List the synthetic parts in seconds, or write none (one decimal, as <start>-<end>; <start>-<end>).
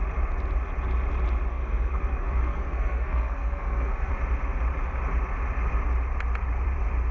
1.5-4.1